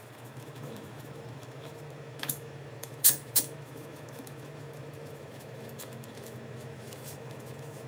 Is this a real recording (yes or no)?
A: no